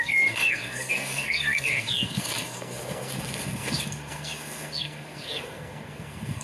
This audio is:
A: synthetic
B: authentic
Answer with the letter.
A